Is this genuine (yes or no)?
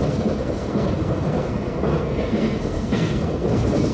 no